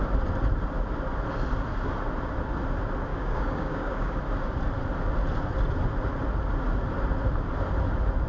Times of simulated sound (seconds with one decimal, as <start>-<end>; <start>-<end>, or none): 3.1-4.2